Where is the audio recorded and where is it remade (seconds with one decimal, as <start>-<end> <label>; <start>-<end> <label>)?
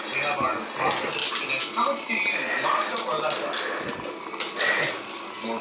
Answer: 0.0-5.6 recorded